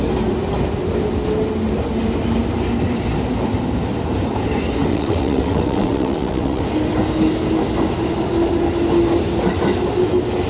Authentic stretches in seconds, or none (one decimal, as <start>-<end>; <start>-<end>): 0.0-4.9; 6.6-10.5